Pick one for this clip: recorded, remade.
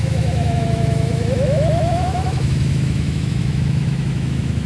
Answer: remade